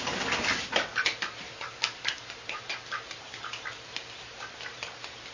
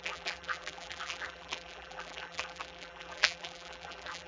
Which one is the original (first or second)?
first